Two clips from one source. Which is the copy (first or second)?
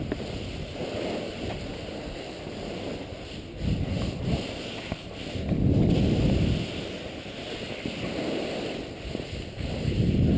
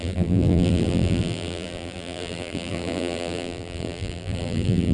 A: second